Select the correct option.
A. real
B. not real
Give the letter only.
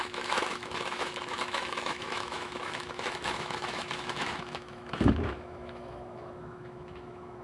B